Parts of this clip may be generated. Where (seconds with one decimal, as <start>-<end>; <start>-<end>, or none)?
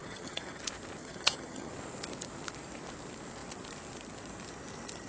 0.0-0.6; 1.0-1.7